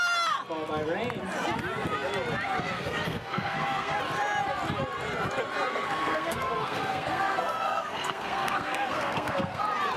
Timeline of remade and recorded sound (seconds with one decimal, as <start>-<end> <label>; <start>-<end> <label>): 0.0-2.6 recorded; 2.6-4.0 remade; 4.0-5.7 recorded; 5.7-9.6 remade; 9.6-10.0 recorded